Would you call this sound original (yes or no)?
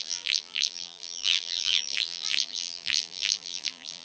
no